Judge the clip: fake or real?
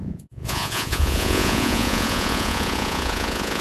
fake